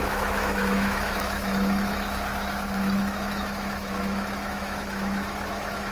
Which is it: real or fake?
fake